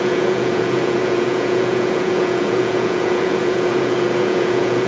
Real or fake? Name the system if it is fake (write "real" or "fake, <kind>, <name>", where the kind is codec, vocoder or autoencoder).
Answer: fake, vocoder, Vocos